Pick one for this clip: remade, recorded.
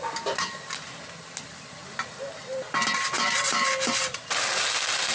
recorded